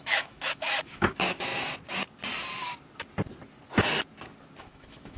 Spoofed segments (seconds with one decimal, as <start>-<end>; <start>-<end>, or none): 0.0-1.5; 4.6-5.2